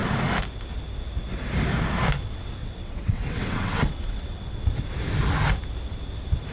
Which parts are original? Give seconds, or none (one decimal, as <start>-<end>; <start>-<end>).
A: 0.0-2.6; 4.6-6.5